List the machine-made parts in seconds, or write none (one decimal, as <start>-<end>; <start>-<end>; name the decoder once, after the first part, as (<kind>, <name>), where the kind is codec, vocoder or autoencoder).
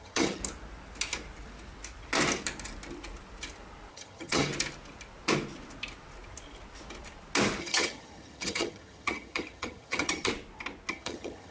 0.0-0.4 (vocoder, HiFi-GAN); 3.9-4.5; 7.6-10.3; 10.9-11.5